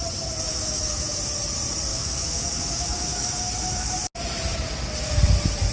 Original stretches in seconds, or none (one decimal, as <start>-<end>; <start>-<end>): 0.0-0.5; 1.1-1.9; 3.9-5.7